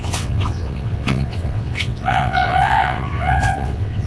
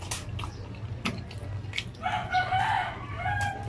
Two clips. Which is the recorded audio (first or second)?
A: second